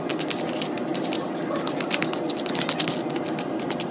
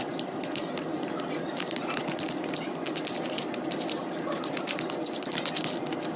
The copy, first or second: second